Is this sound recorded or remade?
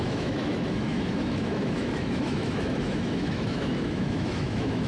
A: remade